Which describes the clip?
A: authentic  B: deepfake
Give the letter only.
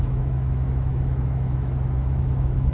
B